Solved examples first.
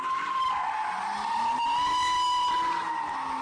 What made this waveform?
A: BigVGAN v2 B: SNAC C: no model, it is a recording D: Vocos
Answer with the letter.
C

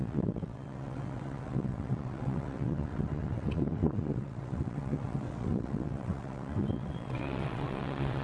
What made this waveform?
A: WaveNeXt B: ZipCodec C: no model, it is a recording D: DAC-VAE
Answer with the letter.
A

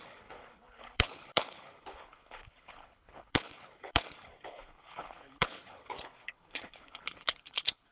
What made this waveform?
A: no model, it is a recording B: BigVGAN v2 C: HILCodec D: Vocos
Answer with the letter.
C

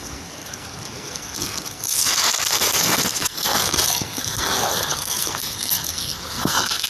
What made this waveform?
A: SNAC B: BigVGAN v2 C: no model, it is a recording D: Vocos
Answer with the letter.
A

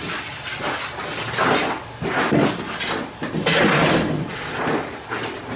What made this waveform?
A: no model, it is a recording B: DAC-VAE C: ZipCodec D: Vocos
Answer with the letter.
A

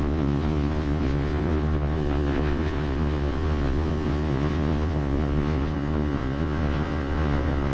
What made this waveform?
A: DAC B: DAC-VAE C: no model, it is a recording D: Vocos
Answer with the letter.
D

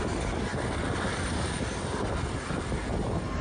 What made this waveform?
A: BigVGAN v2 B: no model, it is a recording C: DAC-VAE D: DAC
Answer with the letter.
B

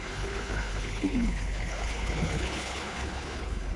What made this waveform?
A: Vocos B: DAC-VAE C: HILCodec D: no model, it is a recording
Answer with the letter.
C